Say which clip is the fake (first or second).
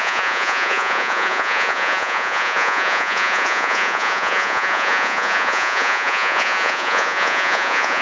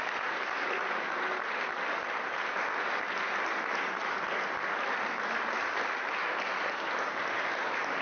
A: first